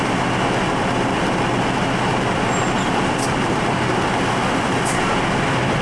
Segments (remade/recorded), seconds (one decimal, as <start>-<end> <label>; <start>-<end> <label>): 0.0-5.8 recorded

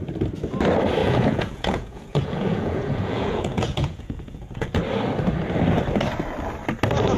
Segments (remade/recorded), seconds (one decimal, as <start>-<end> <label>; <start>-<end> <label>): 0.0-1.0 recorded; 1.0-4.8 remade; 4.8-7.2 recorded

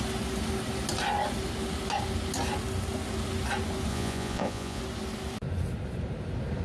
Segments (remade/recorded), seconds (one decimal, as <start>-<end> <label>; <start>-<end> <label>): 0.0-3.9 recorded; 3.9-4.8 remade; 4.8-6.6 recorded

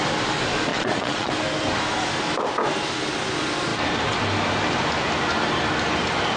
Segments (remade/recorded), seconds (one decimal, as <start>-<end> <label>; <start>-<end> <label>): 0.0-0.7 recorded; 0.7-1.3 remade; 1.3-6.4 recorded

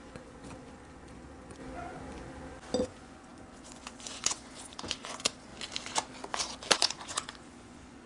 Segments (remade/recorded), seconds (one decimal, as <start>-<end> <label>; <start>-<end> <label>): 0.0-1.6 remade; 1.6-2.8 recorded; 2.8-5.5 remade; 5.5-6.7 recorded; 6.7-8.1 remade

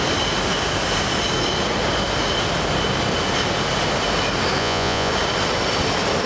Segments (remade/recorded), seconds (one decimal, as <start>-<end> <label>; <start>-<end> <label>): 0.0-4.6 recorded; 4.6-5.1 remade; 5.1-6.3 recorded

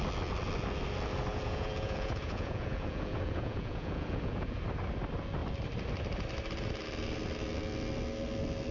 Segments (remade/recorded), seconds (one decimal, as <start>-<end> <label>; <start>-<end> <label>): 0.0-1.3 recorded; 1.3-4.6 remade; 4.6-8.7 recorded